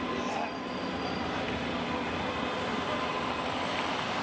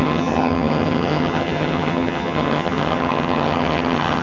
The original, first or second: first